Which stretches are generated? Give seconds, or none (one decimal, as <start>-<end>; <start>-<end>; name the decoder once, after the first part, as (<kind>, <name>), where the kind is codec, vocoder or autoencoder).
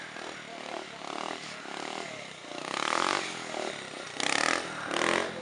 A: 0.5-3.7 (codec, DAC)